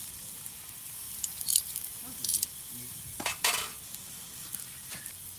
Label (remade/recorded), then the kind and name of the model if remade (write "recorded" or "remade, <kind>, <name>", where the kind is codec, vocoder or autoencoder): recorded